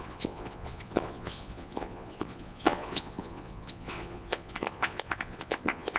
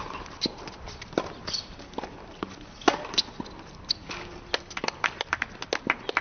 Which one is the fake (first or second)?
first